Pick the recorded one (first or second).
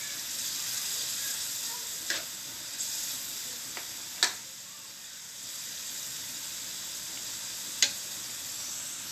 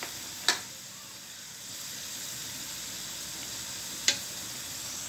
first